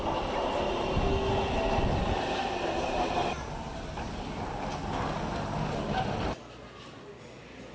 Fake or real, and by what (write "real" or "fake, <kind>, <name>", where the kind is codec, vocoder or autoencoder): real